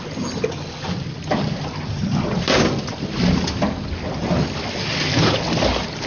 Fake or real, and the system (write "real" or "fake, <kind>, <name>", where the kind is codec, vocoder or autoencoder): real